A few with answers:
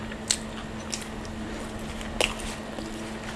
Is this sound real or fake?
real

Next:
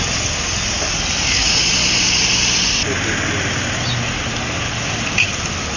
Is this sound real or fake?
real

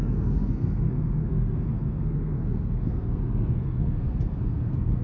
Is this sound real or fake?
fake